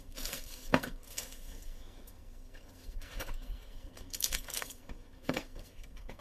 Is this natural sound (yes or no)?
no